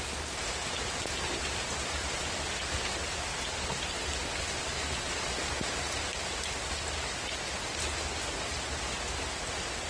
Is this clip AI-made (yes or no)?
no